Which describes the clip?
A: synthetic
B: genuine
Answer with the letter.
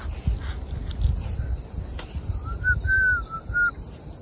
B